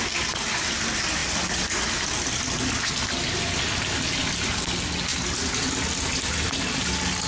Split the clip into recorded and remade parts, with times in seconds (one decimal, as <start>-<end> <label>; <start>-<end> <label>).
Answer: 0.0-7.3 recorded

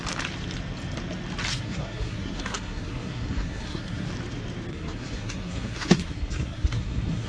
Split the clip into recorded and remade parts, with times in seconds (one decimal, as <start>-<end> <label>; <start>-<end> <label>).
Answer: 0.0-1.5 recorded; 1.5-4.1 remade; 4.1-4.7 recorded; 4.7-7.3 remade